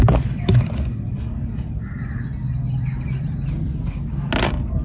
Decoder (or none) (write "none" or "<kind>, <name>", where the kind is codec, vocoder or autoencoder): none